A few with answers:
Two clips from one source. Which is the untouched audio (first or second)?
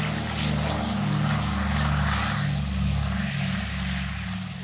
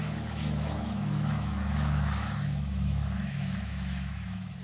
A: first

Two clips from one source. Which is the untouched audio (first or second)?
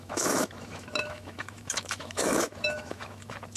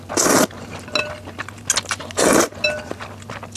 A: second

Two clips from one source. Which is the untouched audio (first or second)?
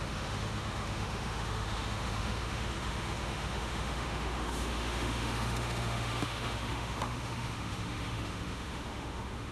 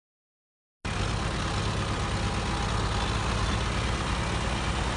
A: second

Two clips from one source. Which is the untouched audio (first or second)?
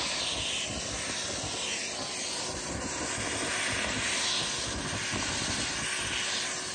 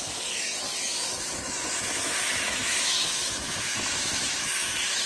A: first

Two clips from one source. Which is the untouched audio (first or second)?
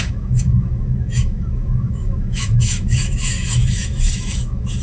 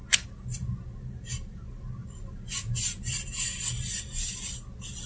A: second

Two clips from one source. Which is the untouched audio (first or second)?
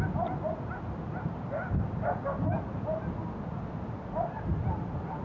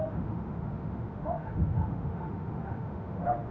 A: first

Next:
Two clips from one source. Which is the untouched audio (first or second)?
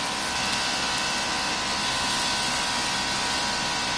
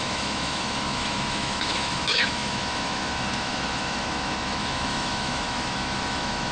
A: first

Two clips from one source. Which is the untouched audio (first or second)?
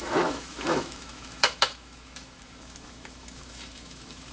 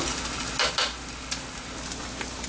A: second